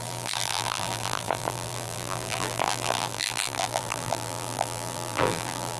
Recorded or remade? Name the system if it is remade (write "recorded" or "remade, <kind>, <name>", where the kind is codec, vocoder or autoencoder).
remade, vocoder, BigVGAN v2